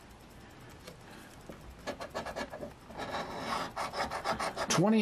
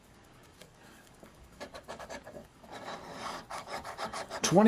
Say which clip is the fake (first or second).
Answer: second